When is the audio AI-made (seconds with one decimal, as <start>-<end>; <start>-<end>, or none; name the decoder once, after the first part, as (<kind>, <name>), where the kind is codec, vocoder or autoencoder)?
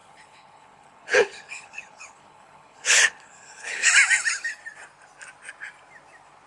0.0-3.9 (codec, HILCodec)